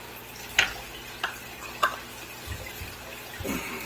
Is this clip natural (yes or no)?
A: yes